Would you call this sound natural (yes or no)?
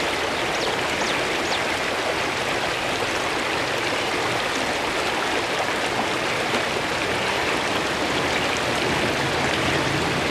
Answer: yes